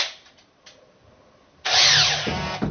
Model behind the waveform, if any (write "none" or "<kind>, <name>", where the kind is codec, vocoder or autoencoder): none